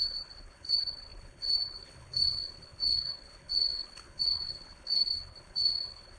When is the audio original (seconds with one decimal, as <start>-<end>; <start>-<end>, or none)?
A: none